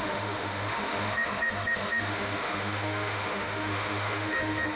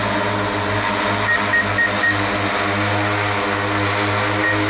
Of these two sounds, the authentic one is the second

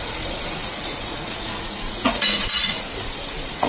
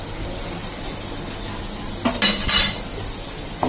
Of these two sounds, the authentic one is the second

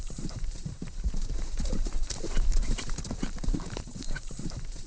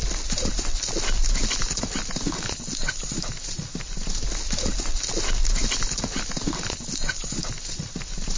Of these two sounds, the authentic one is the second